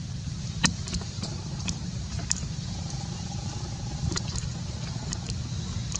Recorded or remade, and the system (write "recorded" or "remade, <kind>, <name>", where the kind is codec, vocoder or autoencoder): remade, vocoder, BigVGAN v2